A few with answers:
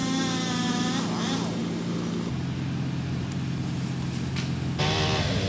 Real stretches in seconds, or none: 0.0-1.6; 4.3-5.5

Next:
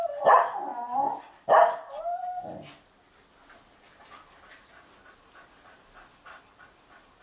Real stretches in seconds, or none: 0.0-7.2